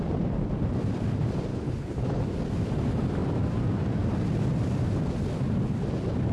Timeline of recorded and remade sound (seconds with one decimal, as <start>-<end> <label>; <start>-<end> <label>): 0.0-1.5 recorded; 1.5-2.2 remade; 2.2-6.3 recorded